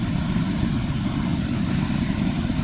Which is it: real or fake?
real